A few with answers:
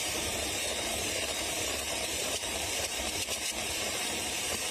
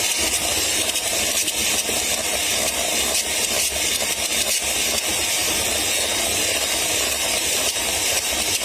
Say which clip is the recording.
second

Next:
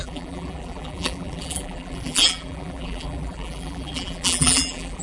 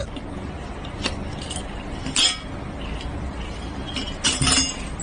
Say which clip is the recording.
second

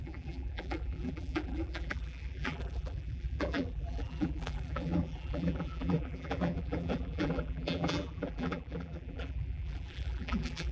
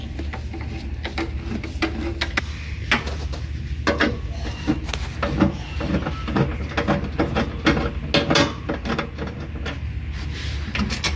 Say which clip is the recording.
second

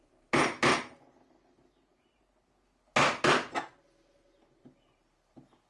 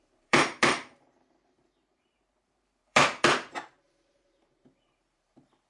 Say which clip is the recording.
first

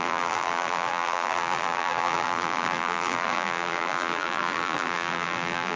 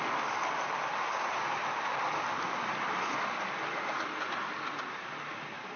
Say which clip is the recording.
second